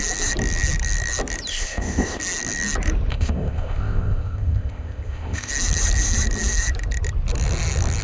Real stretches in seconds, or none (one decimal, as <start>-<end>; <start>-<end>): 0.0-1.5; 2.2-3.1; 5.5-8.0